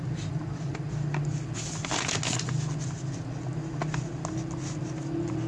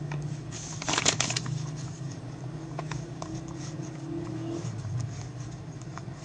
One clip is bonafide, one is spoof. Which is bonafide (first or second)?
first